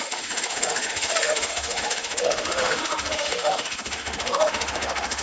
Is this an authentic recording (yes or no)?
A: no